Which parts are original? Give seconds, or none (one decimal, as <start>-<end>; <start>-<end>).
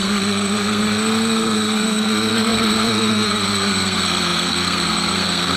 none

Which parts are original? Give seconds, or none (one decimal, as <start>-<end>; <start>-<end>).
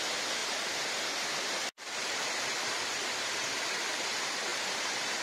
0.0-0.4; 3.5-4.5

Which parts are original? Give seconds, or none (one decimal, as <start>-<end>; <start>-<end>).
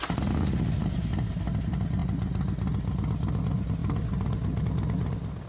0.0-5.5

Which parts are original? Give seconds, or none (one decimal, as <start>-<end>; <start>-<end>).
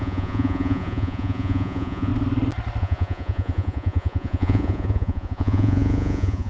2.1-2.8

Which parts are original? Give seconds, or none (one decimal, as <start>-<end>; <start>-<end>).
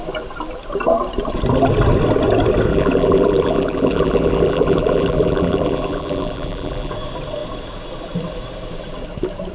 0.0-2.7; 6.9-9.5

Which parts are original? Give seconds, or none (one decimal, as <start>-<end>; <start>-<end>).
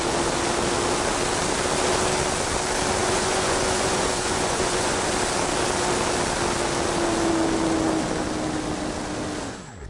0.0-3.0; 5.1-9.9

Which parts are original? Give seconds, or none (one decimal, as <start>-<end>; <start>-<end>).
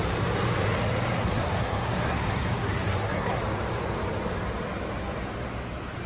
0.0-1.2; 3.4-6.1